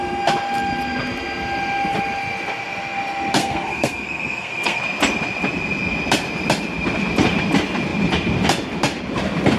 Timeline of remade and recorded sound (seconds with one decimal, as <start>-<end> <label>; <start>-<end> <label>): 0.0-3.4 recorded; 3.4-4.8 remade; 4.8-9.6 recorded